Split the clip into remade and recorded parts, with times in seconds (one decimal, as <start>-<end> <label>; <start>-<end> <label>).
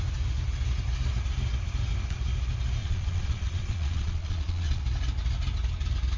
0.0-2.8 recorded; 2.8-4.8 remade; 4.8-6.2 recorded